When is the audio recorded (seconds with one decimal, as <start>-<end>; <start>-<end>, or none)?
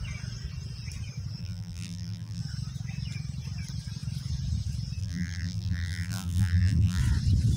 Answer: 0.0-1.4; 2.4-5.0; 7.0-7.6